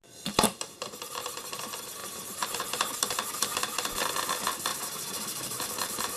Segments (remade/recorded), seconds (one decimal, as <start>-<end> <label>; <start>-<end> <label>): 0.0-3.5 remade; 3.5-4.3 recorded; 4.3-6.2 remade